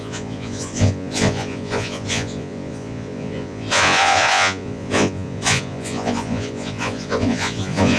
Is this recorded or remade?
remade